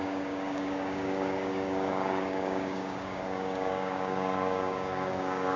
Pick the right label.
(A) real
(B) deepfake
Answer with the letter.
B